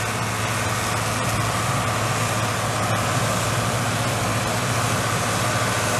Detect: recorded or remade recorded